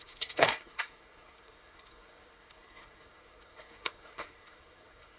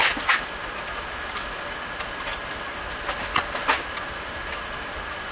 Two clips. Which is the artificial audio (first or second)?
first